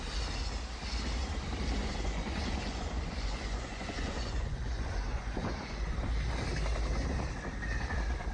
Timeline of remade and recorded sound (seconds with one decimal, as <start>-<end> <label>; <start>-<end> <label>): 0.0-1.8 recorded; 1.8-5.9 remade; 5.9-8.3 recorded